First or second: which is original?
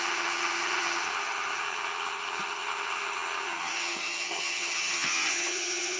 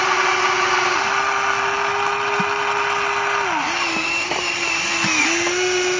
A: second